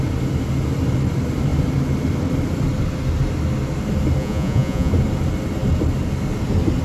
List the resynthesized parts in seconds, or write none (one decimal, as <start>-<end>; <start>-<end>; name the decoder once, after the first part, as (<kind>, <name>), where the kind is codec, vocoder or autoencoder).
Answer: 4.2-4.9 (vocoder, Vocos)